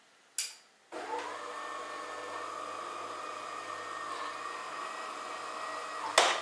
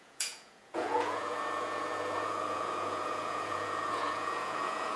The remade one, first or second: second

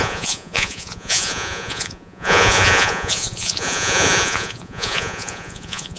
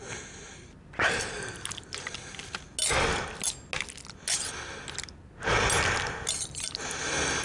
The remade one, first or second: first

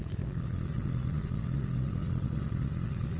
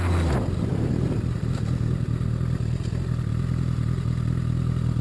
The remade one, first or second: first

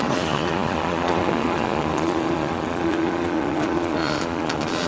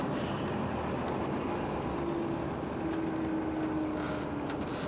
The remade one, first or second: first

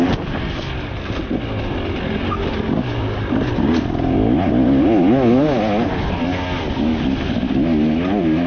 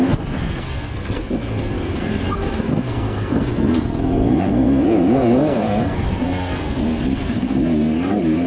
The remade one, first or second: second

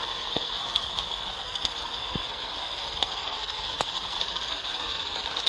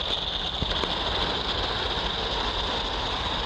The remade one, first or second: first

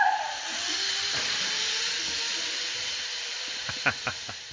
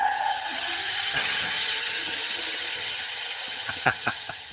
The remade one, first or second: second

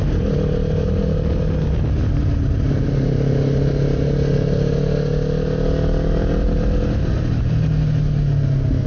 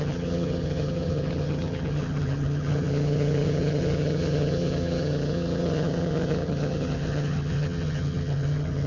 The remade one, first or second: second